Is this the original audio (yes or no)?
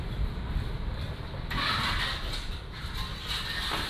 yes